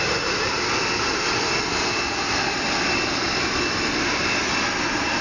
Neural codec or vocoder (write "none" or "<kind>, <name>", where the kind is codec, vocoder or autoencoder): none